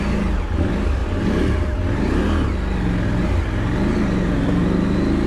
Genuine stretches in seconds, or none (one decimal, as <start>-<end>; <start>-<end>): none